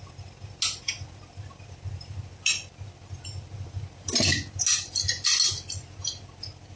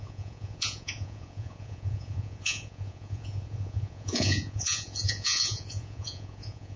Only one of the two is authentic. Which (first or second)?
first